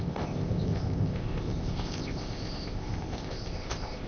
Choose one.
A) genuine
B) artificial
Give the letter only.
B